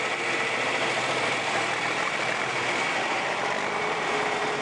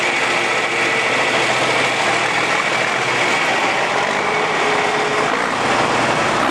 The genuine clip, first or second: second